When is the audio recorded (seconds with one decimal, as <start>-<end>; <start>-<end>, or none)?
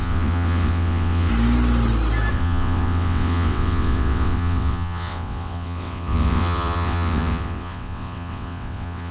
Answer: 1.3-2.3